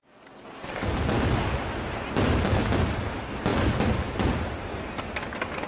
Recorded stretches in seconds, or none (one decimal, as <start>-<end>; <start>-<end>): 0.0-5.7